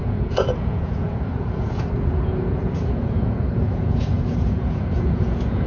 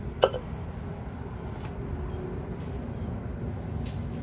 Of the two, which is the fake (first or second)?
first